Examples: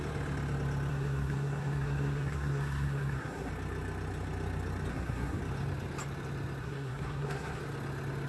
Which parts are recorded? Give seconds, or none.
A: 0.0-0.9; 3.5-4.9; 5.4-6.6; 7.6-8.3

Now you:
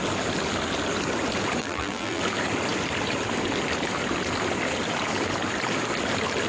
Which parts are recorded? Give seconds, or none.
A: 0.0-1.6; 2.2-6.5

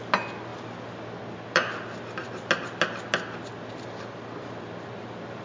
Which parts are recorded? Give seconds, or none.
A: 0.0-5.4

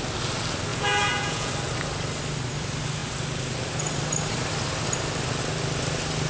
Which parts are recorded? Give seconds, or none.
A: 0.0-0.7; 1.5-6.3